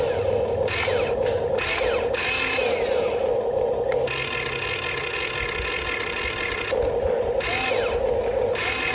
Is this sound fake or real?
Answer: real